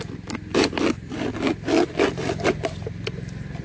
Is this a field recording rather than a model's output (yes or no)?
yes